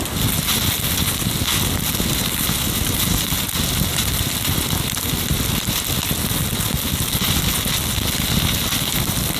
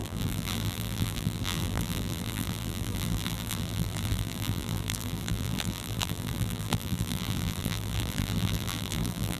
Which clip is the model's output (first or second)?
second